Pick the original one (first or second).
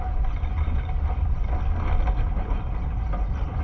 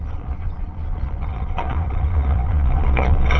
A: first